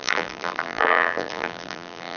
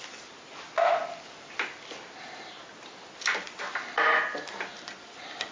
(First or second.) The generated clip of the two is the first